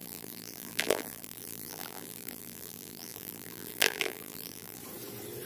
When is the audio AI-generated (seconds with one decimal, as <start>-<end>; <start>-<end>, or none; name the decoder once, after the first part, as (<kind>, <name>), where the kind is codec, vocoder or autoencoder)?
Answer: 0.0-4.8 (vocoder, BigVGAN v2)